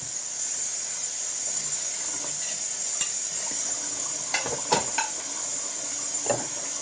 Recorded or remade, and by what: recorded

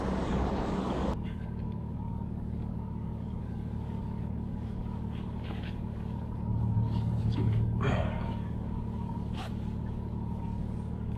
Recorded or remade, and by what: remade, codec, DAC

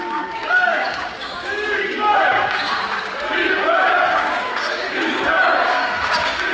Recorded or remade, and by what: remade, codec, DAC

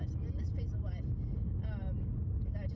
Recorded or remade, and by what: recorded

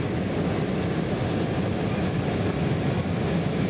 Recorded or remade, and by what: recorded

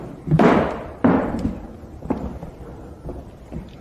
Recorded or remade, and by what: recorded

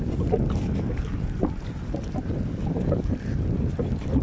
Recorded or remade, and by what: recorded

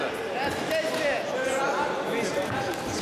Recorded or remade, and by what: recorded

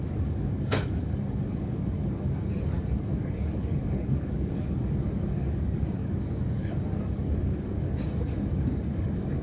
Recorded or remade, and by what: remade, codec, DAC